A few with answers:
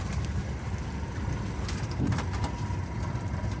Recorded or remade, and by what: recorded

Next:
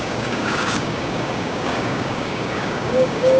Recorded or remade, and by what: remade, codec, DAC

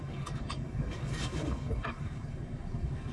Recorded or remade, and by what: remade, codec, DAC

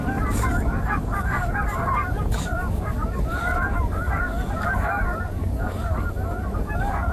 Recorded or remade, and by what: remade, codec, DAC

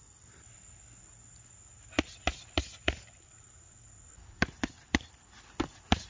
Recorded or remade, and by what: recorded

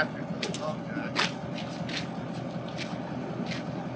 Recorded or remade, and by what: recorded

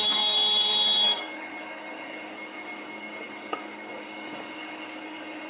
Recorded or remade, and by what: remade, codec, DAC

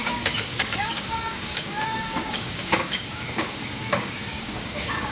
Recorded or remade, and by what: remade, codec, DAC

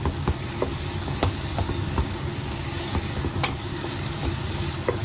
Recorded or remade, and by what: remade, codec, DAC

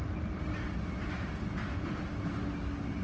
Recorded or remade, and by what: recorded